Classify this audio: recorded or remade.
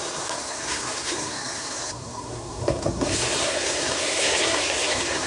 remade